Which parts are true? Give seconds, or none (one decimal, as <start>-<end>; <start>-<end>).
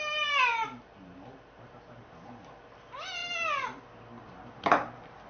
0.0-5.3